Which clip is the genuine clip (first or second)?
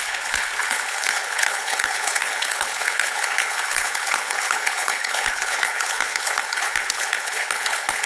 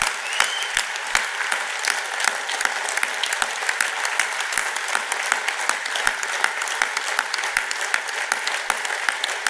second